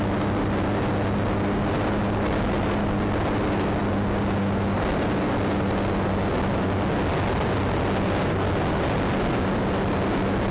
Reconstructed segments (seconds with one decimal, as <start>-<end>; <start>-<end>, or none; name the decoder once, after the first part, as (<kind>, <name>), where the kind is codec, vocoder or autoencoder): none